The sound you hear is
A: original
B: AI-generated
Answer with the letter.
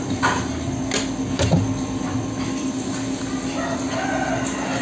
A